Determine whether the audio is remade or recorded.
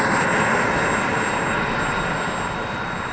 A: recorded